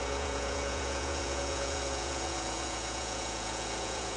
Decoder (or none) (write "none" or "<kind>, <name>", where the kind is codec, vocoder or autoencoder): vocoder, Vocos